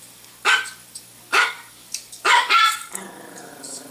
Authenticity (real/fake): fake